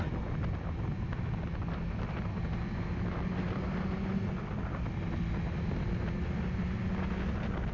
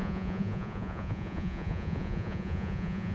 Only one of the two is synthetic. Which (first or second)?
second